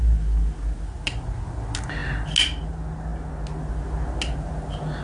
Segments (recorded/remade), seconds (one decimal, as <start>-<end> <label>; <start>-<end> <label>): 0.0-5.0 recorded